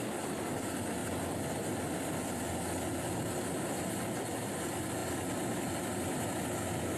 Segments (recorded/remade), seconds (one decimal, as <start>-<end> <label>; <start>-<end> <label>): 0.0-7.0 recorded